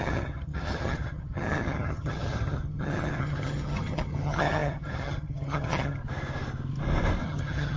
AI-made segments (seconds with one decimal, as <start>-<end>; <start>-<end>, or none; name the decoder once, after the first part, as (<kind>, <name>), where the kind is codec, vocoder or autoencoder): 0.0-6.0 (vocoder, HiFi-GAN); 7.2-7.8